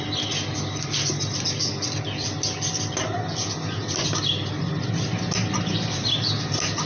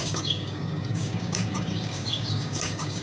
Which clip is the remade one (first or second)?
second